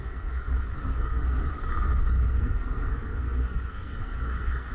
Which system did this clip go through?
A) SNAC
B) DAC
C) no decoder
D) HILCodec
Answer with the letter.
A